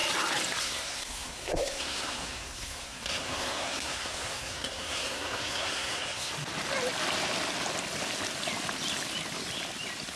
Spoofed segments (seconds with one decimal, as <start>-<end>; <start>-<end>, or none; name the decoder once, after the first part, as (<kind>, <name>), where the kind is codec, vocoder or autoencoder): 0.6-6.3 (codec, SNAC)